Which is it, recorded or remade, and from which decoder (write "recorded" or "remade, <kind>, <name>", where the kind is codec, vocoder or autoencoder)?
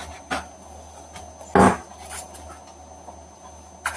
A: recorded